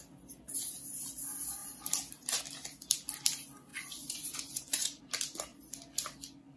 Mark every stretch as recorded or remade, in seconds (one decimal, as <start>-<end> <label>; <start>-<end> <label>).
0.0-3.7 recorded; 3.7-5.0 remade; 5.0-6.6 recorded